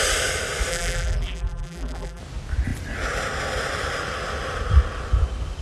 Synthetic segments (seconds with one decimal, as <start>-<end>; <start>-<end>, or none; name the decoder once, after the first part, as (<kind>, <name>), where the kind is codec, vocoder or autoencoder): 0.7-2.2 (vocoder, BigVGAN v2)